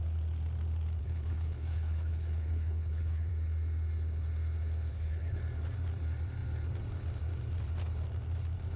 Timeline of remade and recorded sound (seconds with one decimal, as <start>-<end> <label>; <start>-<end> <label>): 0.0-1.0 recorded; 1.0-3.3 remade; 3.3-4.9 recorded; 4.9-5.4 remade; 5.4-8.8 recorded